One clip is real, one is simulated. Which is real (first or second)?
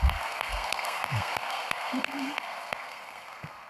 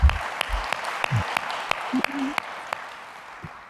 second